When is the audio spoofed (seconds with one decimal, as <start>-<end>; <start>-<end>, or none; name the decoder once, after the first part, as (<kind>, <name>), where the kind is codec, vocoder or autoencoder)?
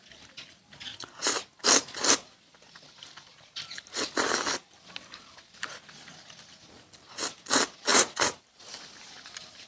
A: 7.9-8.4 (vocoder, Vocos)